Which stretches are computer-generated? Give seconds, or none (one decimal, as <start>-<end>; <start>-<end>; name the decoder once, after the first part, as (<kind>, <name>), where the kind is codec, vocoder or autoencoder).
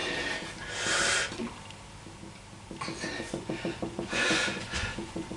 3.2-5.4 (vocoder, Vocos)